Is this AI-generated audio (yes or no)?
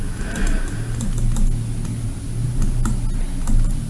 no